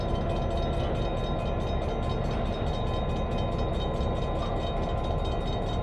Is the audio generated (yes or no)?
no